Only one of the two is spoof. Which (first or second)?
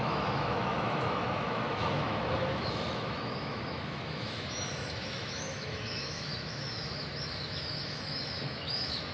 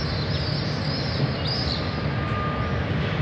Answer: first